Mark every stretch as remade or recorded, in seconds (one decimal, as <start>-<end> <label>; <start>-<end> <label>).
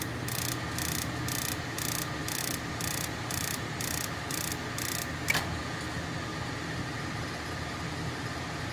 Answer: 0.0-2.4 recorded; 2.4-4.5 remade; 4.5-6.3 recorded; 6.3-8.7 remade